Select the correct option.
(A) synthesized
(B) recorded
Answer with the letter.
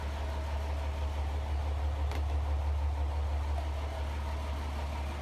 B